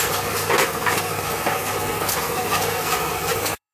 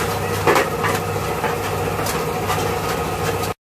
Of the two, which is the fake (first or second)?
first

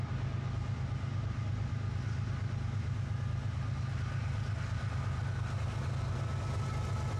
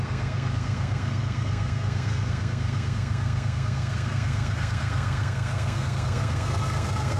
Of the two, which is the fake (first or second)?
second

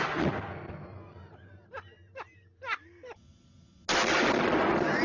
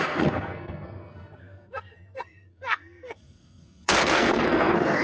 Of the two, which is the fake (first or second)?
second